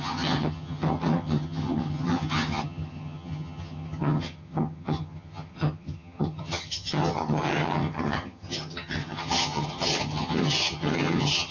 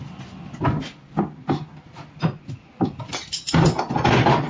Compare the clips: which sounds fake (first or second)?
first